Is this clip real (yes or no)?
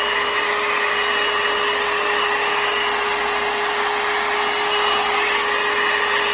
yes